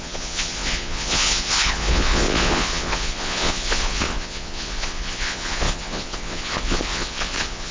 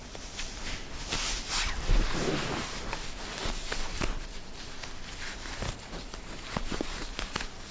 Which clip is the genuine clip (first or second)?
second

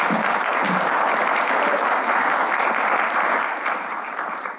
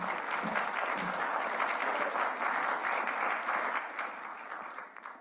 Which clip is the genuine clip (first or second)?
second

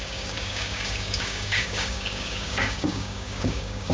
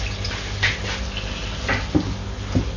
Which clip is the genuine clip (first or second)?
second